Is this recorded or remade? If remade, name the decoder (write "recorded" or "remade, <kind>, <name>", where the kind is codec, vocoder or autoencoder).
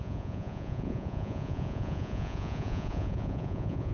remade, vocoder, Vocos